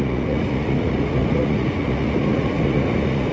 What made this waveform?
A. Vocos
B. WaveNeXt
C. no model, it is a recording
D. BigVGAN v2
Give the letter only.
A